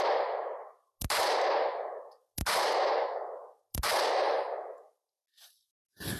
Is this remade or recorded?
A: recorded